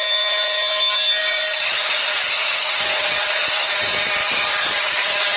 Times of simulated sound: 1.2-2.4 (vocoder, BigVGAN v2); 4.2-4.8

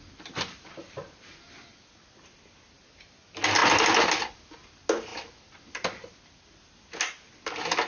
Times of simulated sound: none

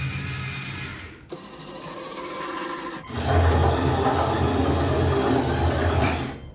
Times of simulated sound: 0.9-2.3 (vocoder, BigVGAN v2)

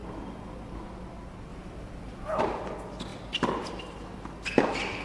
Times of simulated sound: 1.5-2.4 (vocoder, BigVGAN v2)

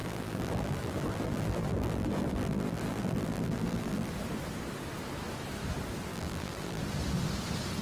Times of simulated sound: 0.0-4.1 (vocoder, BigVGAN v2); 6.1-6.8

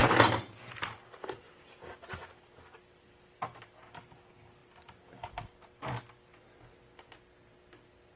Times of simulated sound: 0.0-4.0 (vocoder, BigVGAN v2); 4.6-6.4

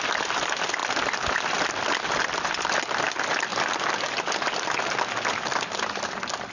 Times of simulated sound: 0.8-1.3 (vocoder, BigVGAN v2)

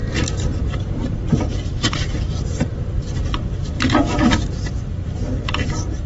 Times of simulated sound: 0.6-6.1 (vocoder, BigVGAN v2)